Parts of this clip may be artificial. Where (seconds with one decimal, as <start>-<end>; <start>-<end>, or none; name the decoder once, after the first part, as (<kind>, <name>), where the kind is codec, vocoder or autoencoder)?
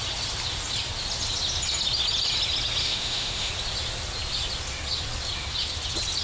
2.8-3.5 (autoencoder, DAC-VAE)